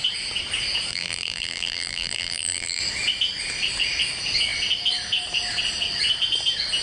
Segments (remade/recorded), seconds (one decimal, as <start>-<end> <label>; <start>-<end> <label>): 0.0-0.9 recorded; 0.9-2.8 remade; 2.8-6.8 recorded